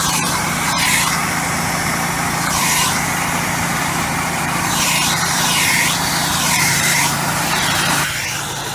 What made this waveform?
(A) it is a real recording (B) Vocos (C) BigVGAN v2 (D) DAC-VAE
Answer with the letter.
C